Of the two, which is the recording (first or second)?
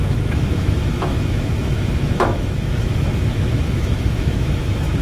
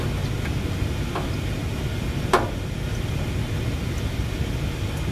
second